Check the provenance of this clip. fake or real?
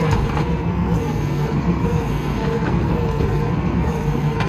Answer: fake